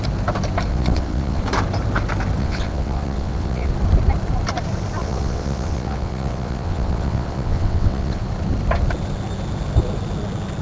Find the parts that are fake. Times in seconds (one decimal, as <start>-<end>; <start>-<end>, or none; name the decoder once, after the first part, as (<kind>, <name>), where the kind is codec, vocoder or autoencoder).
0.7-1.4 (vocoder, WaveNeXt); 2.4-3.7; 5.0-8.2